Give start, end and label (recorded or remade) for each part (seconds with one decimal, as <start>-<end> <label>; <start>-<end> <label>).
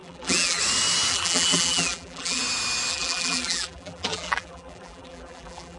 0.0-0.6 remade; 0.6-1.1 recorded; 1.1-2.4 remade; 2.4-2.9 recorded; 2.9-5.8 remade